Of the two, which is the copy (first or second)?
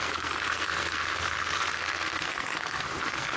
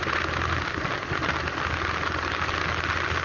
first